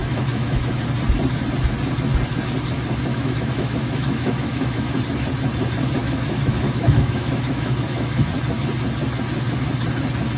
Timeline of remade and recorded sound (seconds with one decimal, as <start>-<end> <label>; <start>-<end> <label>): 0.0-0.8 remade; 0.8-3.1 recorded; 3.1-5.0 remade; 5.0-6.0 recorded; 6.0-8.3 remade; 8.3-10.4 recorded